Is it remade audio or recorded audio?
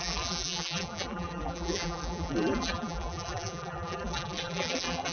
remade